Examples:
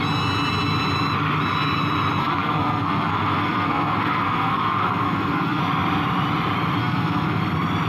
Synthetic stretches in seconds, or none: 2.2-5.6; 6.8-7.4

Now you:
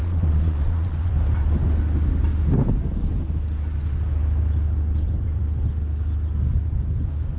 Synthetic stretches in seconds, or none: 0.0-1.1

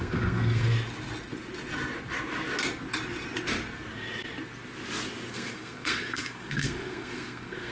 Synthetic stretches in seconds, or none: 0.0-0.7; 5.3-7.7

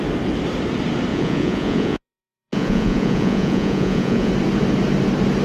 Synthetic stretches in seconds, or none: 1.1-4.3

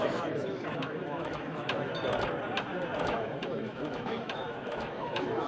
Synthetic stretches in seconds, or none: 0.0-1.9; 3.0-5.5

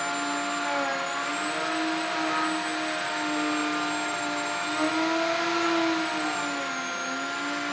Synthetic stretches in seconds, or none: none